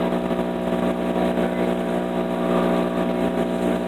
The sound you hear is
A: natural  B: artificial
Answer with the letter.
A